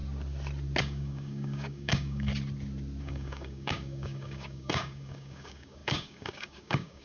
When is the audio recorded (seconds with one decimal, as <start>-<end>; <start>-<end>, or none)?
0.0-0.8; 2.3-3.0